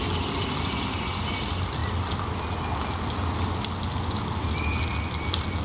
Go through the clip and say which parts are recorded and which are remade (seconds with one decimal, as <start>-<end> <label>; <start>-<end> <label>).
0.0-5.6 recorded